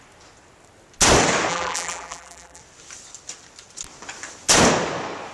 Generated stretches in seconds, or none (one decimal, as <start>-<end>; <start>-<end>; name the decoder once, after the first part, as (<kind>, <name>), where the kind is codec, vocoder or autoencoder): 1.5-2.6 (vocoder, BigVGAN v2)